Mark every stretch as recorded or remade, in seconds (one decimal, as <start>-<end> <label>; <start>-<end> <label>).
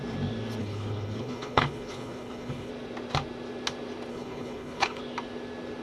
0.0-0.6 recorded; 0.6-2.7 remade; 2.7-4.1 recorded; 4.1-5.0 remade; 5.0-5.8 recorded